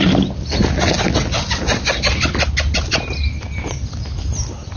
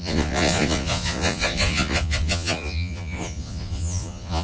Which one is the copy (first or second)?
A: second